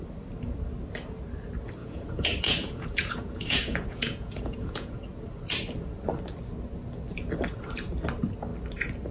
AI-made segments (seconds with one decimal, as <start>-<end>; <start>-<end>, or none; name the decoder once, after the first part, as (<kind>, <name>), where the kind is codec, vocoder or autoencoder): 1.8-5.0 (vocoder, Vocos)